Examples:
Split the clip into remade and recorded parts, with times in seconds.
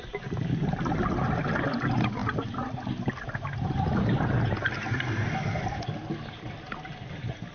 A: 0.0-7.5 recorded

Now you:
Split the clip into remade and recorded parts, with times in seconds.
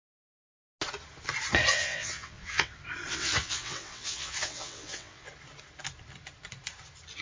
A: 0.0-1.7 recorded; 1.7-2.7 remade; 2.7-3.1 recorded; 3.1-5.3 remade; 5.3-7.2 recorded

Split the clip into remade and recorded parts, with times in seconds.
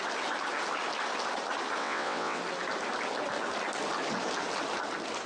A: 0.0-1.8 recorded; 1.8-2.4 remade; 2.4-5.3 recorded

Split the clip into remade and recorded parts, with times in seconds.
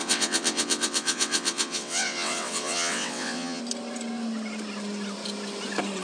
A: 0.0-3.6 remade; 3.6-6.0 recorded